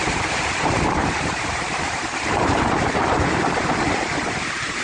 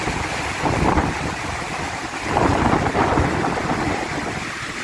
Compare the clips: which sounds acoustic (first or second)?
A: second